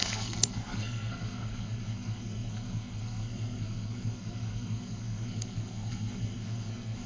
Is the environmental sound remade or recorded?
remade